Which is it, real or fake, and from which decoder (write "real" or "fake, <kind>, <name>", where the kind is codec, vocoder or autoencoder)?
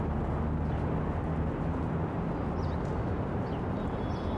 real